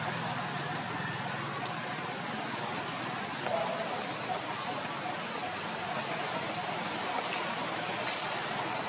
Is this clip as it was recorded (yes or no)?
yes